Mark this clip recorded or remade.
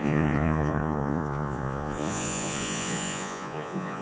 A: remade